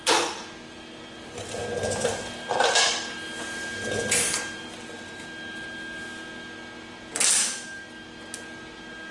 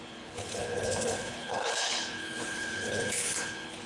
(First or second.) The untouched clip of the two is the first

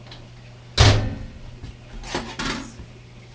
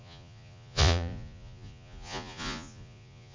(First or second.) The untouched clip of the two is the first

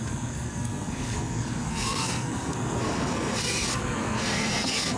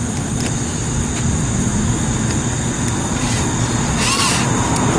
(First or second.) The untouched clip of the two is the second